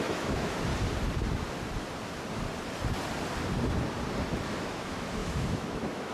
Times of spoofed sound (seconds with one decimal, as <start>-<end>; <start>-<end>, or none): 0.0-0.7; 4.4-6.1

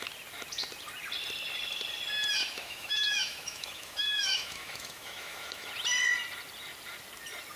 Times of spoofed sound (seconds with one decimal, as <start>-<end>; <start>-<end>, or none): 2.4-5.7

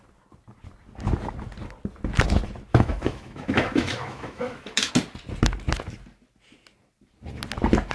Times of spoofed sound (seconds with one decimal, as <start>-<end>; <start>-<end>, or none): 2.7-4.9

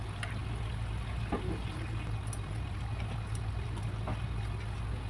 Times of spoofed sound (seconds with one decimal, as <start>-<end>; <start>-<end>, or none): none

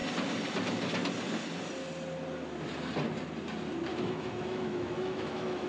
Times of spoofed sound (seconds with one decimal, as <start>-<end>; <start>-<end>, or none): 3.9-5.7

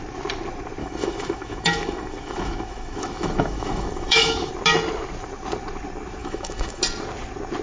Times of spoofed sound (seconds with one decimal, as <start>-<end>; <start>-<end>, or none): 0.8-4.5; 6.2-6.8

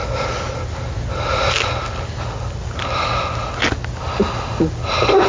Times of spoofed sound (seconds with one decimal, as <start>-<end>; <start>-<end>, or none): none

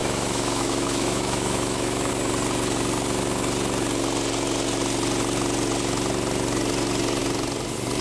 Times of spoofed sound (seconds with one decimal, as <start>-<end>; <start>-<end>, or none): 0.0-2.1